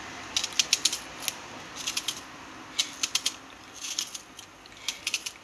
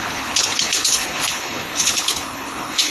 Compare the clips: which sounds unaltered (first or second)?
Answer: first